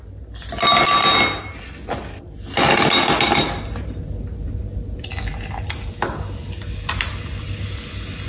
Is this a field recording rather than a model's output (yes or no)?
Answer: yes